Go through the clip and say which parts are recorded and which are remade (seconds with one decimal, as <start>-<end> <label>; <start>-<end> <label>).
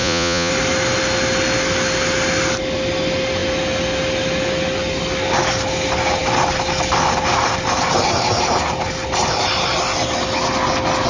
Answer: 0.0-0.5 remade; 0.5-11.1 recorded